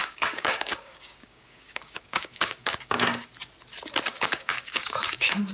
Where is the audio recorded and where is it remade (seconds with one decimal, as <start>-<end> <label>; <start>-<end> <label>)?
0.0-3.3 remade; 3.3-4.1 recorded; 4.1-5.5 remade